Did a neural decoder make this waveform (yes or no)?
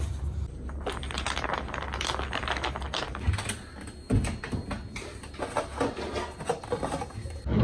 no